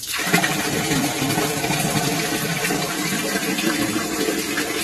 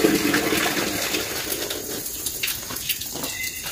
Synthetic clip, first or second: first